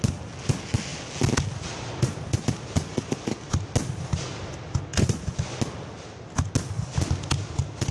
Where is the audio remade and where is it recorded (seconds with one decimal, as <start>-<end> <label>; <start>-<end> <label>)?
0.0-2.9 recorded; 2.9-3.4 remade; 3.4-4.9 recorded; 4.9-5.6 remade; 5.6-7.9 recorded

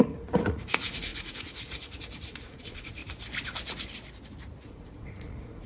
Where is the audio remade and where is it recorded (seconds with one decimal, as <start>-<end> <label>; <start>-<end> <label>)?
0.0-3.0 remade; 3.0-4.6 recorded; 4.6-5.7 remade